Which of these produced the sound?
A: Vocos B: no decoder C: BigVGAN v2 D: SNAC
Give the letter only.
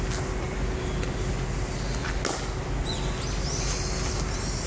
B